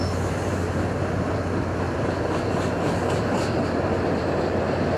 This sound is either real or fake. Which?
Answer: real